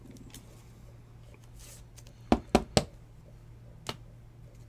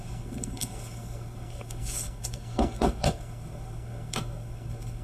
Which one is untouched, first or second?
first